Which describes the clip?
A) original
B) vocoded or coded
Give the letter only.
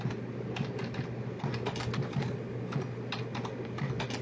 A